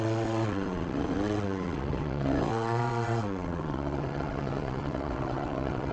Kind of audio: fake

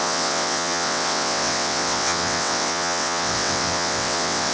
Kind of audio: fake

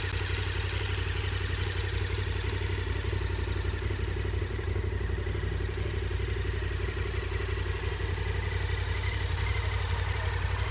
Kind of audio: real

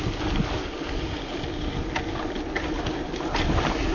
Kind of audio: real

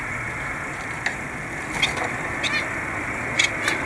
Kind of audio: real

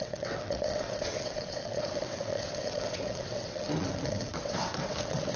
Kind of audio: fake